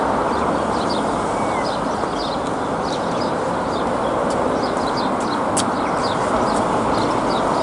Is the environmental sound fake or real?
real